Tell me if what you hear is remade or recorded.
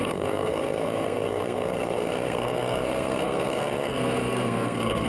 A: remade